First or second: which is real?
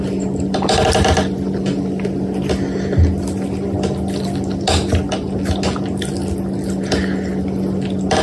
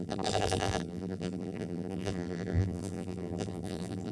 first